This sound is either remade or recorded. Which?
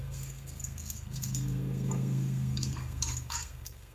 remade